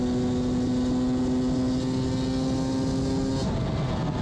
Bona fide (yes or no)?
yes